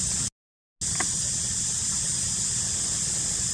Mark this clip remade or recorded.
recorded